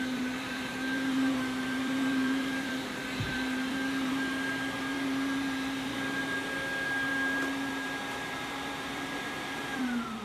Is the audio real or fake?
fake